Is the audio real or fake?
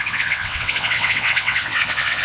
fake